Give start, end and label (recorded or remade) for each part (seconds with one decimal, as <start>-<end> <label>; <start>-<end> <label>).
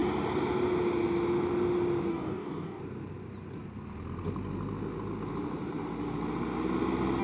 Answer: 0.0-2.1 recorded; 2.1-2.8 remade; 2.8-7.2 recorded